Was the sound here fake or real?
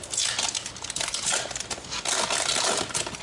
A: real